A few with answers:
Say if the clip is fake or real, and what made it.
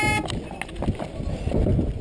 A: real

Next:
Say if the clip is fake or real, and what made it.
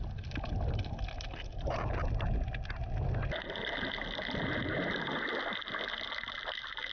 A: real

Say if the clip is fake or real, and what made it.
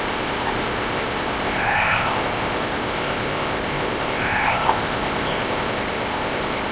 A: fake, codec, ZipCodec